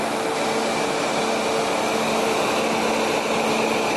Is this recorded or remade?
recorded